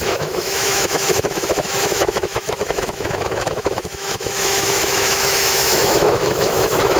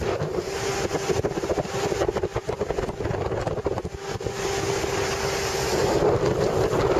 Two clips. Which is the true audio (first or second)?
second